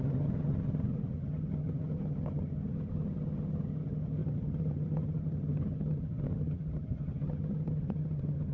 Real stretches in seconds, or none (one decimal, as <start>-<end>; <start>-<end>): none